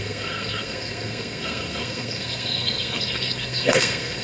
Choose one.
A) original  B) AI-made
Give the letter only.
B